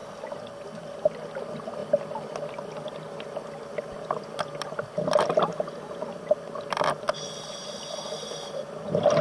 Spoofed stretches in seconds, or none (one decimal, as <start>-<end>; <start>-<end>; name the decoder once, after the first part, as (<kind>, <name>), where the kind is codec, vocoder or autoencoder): none